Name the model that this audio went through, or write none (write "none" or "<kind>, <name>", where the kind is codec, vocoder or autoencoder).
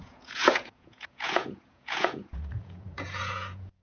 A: vocoder, Vocos